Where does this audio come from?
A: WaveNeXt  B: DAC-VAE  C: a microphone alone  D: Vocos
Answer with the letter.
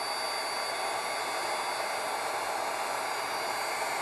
C